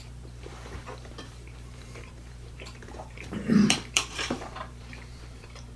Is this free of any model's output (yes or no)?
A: no